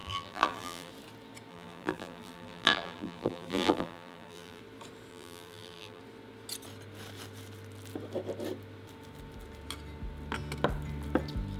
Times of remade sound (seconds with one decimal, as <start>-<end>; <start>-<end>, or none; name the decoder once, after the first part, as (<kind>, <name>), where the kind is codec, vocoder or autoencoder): 0.0-0.9 (vocoder, BigVGAN v2); 1.5-4.6; 5.1-6.0